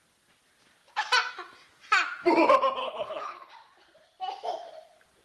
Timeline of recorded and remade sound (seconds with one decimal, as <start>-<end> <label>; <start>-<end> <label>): 0.0-2.8 recorded; 2.8-3.5 remade; 3.5-5.2 recorded